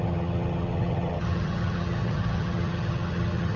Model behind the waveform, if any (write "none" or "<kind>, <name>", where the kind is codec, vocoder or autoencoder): vocoder, HiFi-GAN